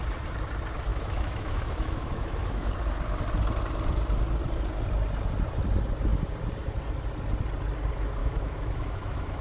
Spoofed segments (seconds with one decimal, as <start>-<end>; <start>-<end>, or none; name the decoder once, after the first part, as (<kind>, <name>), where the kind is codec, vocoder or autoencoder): 0.9-2.7 (autoencoder, DAC-VAE); 8.2-9.4